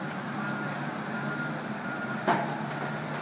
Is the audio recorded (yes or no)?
yes